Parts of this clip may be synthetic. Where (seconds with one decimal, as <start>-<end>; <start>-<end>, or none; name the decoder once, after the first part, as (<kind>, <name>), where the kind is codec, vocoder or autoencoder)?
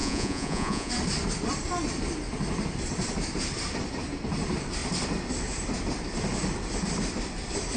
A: 0.0-0.9 (vocoder, Vocos)